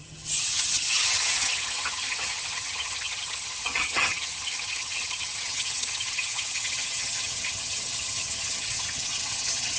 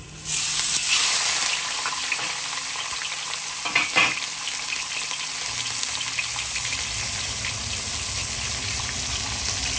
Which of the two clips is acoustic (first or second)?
second